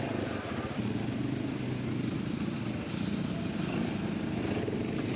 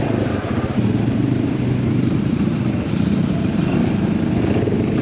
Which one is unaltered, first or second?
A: first